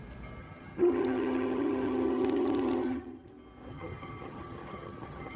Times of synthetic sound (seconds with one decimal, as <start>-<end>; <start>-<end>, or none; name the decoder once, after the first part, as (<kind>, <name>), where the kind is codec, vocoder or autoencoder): 0.4-3.3 (vocoder, HiFi-GAN); 3.7-5.4